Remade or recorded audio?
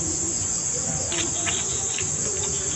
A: remade